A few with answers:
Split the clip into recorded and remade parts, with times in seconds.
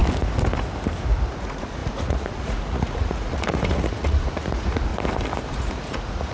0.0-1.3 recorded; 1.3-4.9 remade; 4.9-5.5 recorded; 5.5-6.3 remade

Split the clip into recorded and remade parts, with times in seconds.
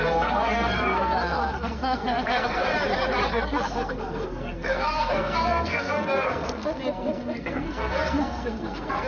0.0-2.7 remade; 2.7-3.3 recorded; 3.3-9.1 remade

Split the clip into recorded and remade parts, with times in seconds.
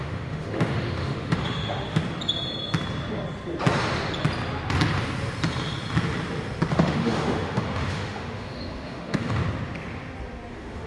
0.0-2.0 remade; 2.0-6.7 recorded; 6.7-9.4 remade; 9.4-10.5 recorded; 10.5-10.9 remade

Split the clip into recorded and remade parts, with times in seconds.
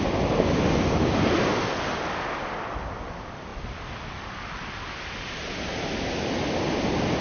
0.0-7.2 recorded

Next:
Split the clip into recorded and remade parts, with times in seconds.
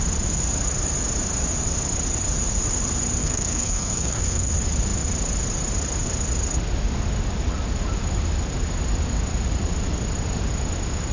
0.0-3.2 recorded; 3.2-4.5 remade; 4.5-11.1 recorded